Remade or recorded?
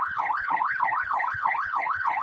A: remade